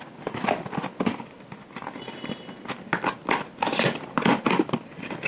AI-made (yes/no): no